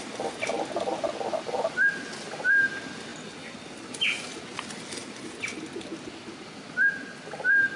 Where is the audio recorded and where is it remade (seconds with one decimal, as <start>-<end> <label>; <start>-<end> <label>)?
0.0-7.8 recorded